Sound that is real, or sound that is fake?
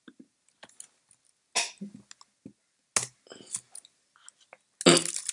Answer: real